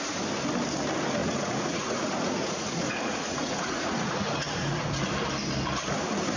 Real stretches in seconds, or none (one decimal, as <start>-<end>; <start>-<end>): 0.0-1.2; 5.0-6.4